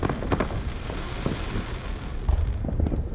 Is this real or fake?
real